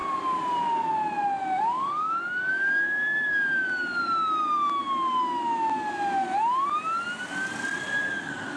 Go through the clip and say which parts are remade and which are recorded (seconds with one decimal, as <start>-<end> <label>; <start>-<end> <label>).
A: 0.0-1.6 recorded; 1.6-3.5 remade; 3.5-8.2 recorded; 8.2-8.6 remade

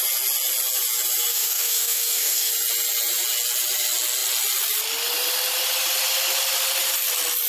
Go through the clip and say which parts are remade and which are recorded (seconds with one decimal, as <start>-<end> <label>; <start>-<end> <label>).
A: 0.0-1.3 recorded; 1.3-2.5 remade; 2.5-7.5 recorded

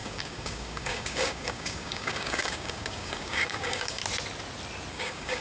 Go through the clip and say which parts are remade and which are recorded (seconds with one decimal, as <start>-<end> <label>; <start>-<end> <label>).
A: 0.0-4.0 remade; 4.0-4.9 recorded; 4.9-5.4 remade

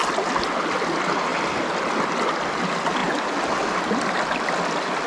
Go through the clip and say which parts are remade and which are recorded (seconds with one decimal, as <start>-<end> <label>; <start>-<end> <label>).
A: 0.0-5.1 recorded

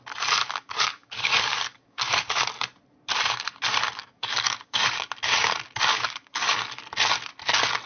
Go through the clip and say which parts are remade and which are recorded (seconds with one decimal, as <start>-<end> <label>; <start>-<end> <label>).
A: 0.0-0.4 recorded; 0.4-2.6 remade; 2.6-4.0 recorded; 4.0-5.0 remade; 5.0-5.9 recorded; 5.9-6.8 remade; 6.8-7.9 recorded

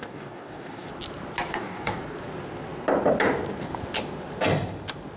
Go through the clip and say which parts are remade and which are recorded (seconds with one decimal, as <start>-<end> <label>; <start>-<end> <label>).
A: 0.0-0.9 remade; 0.9-1.5 recorded; 1.5-2.0 remade; 2.0-5.2 recorded

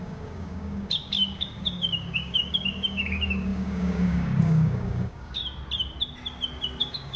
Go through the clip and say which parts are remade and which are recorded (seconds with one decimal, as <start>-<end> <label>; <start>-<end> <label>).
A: 0.0-5.4 remade; 5.4-6.8 recorded; 6.8-7.2 remade

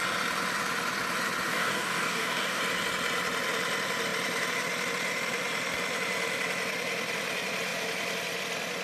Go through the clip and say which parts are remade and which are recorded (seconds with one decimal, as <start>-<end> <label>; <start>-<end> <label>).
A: 0.0-1.5 recorded; 1.5-2.6 remade; 2.6-8.8 recorded